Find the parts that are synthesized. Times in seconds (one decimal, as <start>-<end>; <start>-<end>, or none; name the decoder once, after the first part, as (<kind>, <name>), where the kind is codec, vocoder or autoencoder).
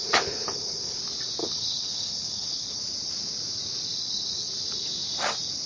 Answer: 0.0-1.0 (codec, HILCodec); 1.4-2.8; 4.0-4.5